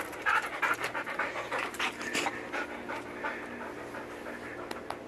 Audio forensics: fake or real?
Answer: real